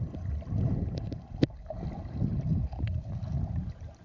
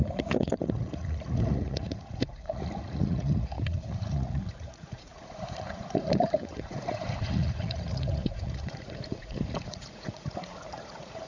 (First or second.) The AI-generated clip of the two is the second